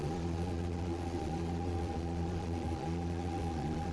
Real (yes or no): no